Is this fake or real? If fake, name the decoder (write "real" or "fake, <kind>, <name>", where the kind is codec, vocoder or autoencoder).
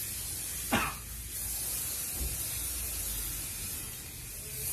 real